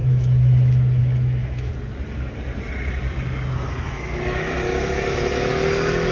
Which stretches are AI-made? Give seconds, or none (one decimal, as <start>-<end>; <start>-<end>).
0.0-1.7; 3.5-6.1